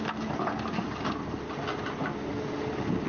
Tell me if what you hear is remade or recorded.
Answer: recorded